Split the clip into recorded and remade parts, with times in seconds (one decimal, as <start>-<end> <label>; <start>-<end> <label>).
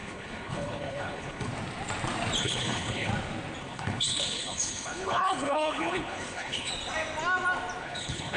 0.0-1.5 remade; 1.5-2.4 recorded; 2.4-3.1 remade; 3.1-3.6 recorded; 3.6-6.7 remade; 6.7-7.8 recorded; 7.8-8.4 remade